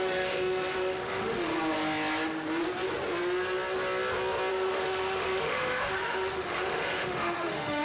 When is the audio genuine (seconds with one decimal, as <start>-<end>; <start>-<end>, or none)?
1.5-4.5